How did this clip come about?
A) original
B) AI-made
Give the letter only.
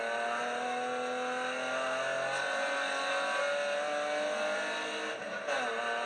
A